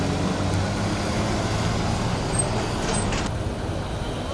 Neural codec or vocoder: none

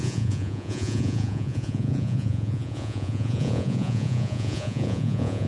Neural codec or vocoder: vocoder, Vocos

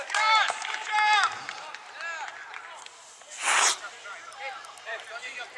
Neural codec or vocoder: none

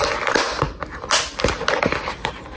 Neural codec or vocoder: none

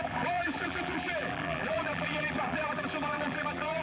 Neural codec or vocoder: vocoder, BigVGAN v2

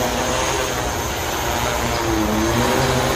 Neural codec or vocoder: none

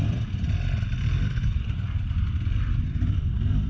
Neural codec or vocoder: none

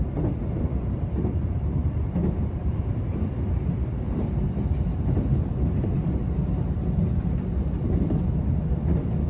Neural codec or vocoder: vocoder, BigVGAN v2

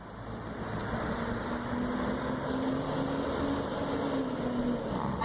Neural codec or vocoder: none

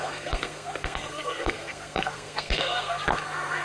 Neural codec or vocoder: codec, SNAC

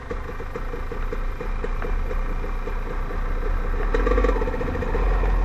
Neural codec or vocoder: none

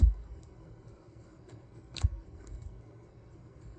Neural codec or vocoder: codec, SNAC